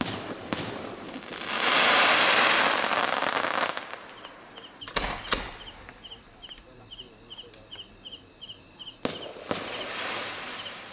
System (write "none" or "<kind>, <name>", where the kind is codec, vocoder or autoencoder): none